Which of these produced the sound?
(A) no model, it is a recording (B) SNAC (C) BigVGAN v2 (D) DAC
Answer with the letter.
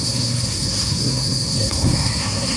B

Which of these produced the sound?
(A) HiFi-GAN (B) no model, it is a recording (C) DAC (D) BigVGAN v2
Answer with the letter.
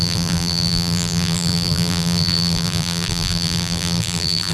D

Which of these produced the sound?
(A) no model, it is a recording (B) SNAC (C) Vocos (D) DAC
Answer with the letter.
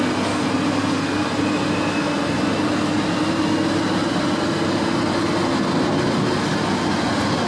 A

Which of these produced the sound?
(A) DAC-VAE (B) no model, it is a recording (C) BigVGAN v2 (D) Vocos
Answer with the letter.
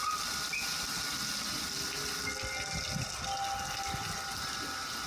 B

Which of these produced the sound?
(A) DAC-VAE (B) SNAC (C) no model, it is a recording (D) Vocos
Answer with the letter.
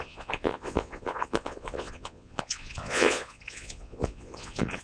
D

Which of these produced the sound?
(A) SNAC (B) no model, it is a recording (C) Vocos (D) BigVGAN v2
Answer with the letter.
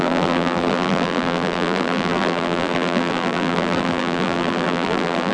D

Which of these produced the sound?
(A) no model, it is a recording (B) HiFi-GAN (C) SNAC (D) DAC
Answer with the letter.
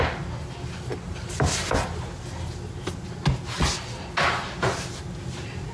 A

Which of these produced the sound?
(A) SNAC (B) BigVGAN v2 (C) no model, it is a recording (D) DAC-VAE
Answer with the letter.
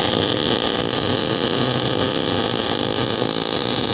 C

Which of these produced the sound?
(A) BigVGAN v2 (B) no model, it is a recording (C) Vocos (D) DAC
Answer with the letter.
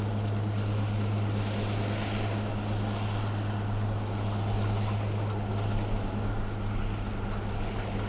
B